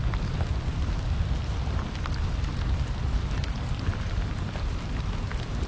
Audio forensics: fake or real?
fake